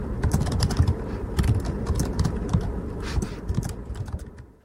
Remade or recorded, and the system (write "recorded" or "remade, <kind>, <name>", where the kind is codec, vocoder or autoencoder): recorded